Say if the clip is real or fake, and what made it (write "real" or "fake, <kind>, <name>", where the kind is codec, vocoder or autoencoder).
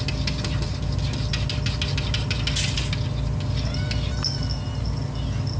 real